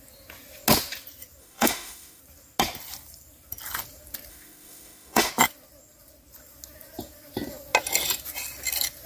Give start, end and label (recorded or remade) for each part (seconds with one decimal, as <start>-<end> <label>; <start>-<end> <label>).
0.0-1.4 recorded; 1.4-2.2 remade; 2.2-4.3 recorded; 4.3-5.3 remade; 5.3-9.1 recorded